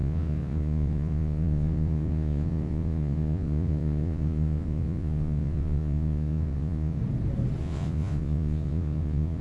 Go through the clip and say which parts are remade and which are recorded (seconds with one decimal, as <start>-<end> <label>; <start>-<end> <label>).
0.0-7.0 remade; 7.0-7.6 recorded; 7.6-9.4 remade